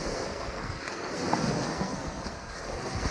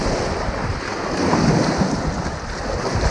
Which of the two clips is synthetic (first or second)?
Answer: first